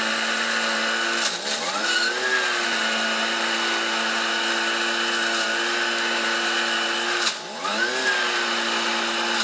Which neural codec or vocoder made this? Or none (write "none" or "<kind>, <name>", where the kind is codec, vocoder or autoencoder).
none